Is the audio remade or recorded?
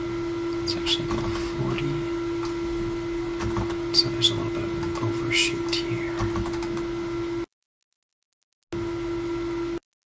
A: recorded